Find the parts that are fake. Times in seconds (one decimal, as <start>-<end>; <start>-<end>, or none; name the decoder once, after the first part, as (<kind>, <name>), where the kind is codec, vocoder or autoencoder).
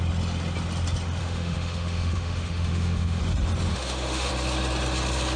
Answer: 1.2-3.2 (autoencoder, DAC-VAE); 3.7-4.3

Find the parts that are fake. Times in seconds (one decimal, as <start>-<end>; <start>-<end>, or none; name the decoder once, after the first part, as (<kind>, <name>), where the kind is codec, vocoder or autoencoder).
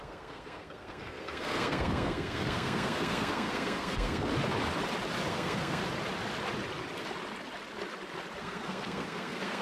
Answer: 0.0-4.3 (codec, SNAC); 5.3-5.8; 8.4-9.6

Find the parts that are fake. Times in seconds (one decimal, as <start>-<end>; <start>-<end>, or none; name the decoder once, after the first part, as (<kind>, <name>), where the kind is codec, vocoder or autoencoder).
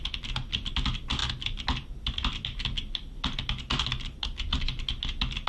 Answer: none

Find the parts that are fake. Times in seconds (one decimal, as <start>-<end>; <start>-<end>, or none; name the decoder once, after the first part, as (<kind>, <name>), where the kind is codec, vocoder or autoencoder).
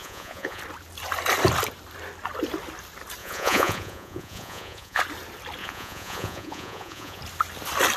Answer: 0.0-0.6 (vocoder, Vocos); 3.2-5.0; 5.6-7.2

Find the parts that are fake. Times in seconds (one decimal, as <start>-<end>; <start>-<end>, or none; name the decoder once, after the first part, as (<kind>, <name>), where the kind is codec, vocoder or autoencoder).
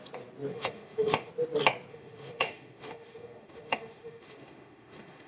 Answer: 0.5-1.3 (autoencoder, DAC-VAE); 1.9-5.3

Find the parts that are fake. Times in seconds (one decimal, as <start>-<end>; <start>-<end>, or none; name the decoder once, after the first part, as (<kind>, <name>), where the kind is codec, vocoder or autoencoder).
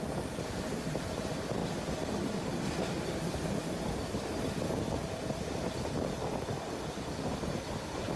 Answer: none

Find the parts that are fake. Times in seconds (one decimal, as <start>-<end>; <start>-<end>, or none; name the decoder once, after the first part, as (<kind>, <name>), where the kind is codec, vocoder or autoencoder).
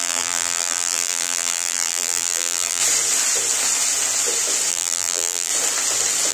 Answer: 0.0-2.8 (vocoder, BigVGAN v2); 4.7-5.5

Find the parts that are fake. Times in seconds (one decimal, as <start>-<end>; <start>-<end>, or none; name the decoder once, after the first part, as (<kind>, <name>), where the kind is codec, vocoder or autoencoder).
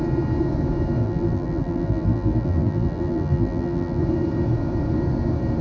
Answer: 1.0-4.0 (vocoder, BigVGAN v2)